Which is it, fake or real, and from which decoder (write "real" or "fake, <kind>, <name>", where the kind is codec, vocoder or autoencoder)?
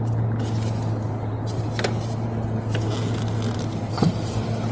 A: real